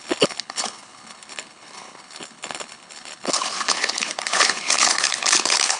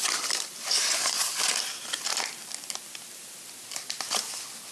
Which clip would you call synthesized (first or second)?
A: first